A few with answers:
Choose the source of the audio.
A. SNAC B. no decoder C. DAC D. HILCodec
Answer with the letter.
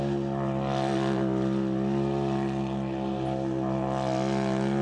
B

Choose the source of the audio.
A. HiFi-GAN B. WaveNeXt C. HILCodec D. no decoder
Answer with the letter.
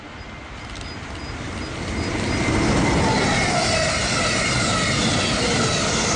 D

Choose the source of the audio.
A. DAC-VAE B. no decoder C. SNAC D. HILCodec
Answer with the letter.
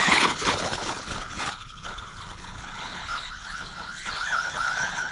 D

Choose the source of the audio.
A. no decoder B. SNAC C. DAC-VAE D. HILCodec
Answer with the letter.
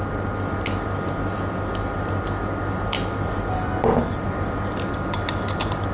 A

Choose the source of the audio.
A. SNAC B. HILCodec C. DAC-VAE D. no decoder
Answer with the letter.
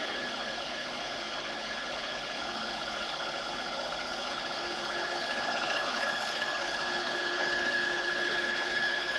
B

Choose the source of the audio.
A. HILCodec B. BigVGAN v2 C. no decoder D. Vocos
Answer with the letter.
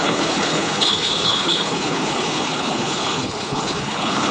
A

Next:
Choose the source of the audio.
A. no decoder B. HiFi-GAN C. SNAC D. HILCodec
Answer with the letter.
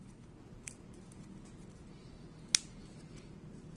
A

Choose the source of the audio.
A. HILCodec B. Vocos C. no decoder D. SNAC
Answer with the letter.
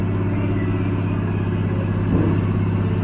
C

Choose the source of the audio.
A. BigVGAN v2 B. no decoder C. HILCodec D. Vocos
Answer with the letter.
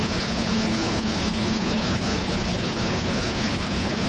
C